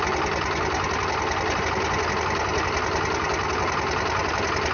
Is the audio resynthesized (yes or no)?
no